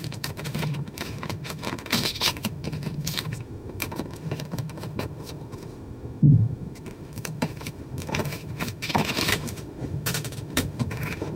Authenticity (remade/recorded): remade